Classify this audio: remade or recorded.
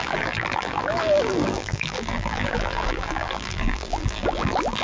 remade